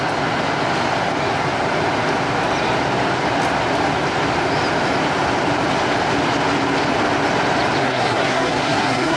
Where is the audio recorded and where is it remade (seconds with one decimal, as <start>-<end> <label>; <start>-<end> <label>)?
0.0-7.8 recorded; 7.8-9.2 remade